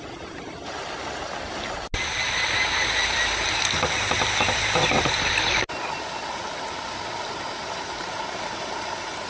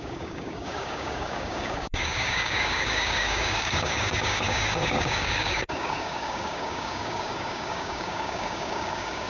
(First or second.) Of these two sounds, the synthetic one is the second